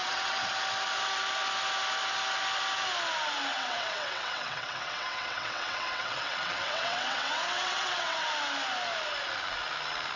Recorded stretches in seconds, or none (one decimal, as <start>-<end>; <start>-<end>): 0.5-3.5; 8.3-10.2